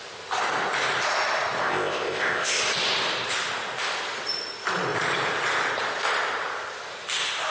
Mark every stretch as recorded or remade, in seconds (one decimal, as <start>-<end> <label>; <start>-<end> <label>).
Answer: 0.0-1.6 recorded; 1.6-2.6 remade; 2.6-7.5 recorded